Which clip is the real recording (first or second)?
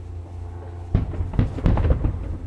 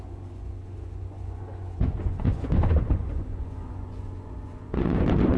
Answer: first